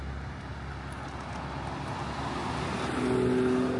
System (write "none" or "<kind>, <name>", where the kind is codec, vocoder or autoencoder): none